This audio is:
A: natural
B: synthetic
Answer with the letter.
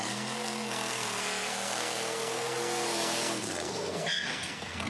B